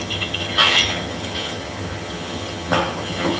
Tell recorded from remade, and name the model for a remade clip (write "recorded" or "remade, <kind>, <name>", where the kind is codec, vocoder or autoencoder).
remade, vocoder, HiFi-GAN